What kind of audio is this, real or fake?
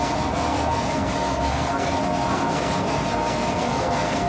fake